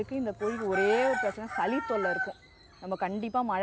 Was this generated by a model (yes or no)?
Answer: no